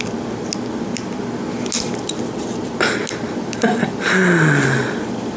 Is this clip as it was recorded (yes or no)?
yes